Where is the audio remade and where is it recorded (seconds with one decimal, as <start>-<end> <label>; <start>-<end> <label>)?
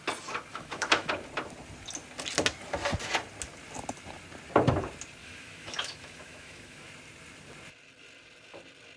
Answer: 0.0-0.5 recorded; 0.5-1.1 remade; 1.1-5.2 recorded; 5.2-6.9 remade; 6.9-9.0 recorded